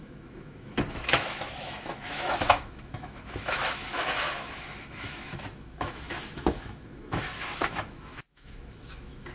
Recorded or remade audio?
remade